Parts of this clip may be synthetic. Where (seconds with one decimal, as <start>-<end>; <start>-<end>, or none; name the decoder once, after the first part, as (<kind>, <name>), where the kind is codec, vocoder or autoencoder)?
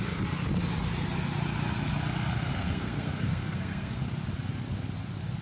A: 2.5-4.0 (codec, SNAC)